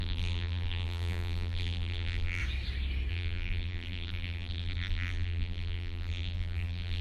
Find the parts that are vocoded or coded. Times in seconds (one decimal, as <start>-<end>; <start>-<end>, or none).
0.0-2.4; 3.1-7.0

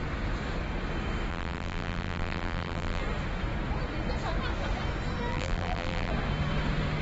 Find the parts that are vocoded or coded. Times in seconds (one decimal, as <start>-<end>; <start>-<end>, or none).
1.3-3.0; 5.3-6.1

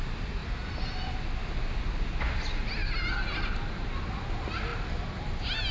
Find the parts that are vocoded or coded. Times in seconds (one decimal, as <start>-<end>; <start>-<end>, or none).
none

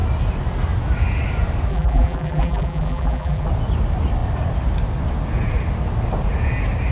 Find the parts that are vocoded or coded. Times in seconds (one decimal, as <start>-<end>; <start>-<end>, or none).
1.7-3.5

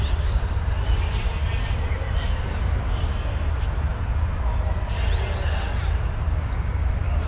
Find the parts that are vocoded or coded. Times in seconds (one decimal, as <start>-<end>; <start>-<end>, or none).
0.0-3.9; 6.7-7.3

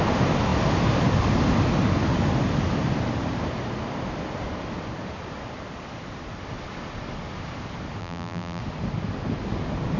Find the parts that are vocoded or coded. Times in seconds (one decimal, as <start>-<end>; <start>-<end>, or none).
8.0-8.6

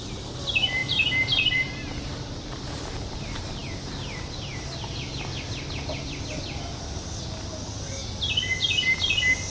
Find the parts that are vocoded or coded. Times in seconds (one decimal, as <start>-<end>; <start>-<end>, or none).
0.8-3.2

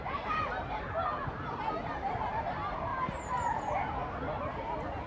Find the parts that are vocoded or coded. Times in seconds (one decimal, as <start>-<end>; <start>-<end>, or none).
none